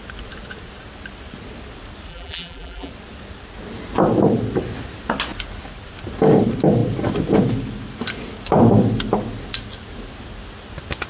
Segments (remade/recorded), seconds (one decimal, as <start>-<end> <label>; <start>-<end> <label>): 0.0-2.1 recorded; 2.1-2.9 remade; 2.9-11.1 recorded